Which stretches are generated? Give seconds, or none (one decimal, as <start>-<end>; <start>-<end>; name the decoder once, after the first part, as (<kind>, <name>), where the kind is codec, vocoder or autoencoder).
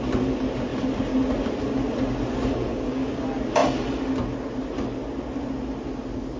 2.7-3.2 (codec, DAC)